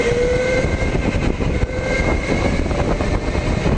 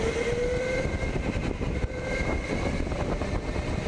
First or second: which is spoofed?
second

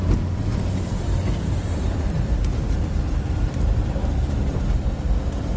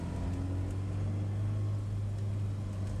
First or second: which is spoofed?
first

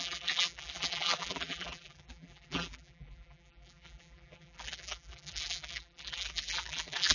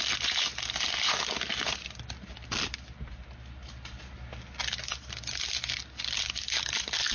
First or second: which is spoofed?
first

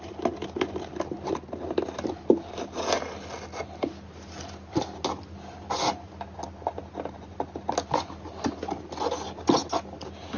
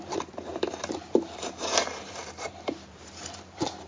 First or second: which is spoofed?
second